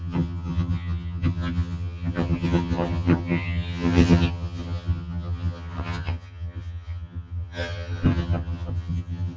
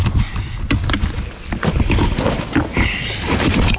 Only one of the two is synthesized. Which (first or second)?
first